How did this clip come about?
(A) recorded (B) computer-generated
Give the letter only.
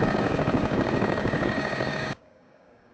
B